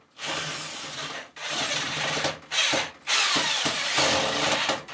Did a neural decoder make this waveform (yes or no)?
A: no